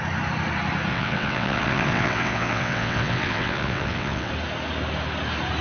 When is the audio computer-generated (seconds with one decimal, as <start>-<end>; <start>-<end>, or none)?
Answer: 0.9-4.3